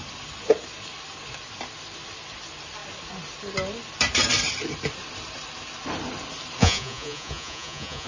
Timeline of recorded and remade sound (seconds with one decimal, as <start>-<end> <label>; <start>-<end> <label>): 0.0-6.6 recorded; 6.6-8.1 remade